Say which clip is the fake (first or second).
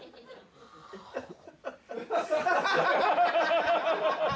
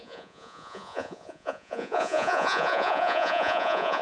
second